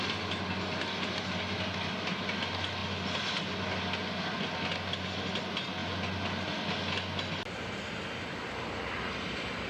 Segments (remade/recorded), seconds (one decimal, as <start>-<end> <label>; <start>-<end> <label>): 0.0-9.7 recorded